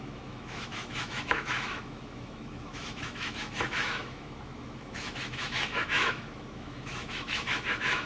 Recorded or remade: remade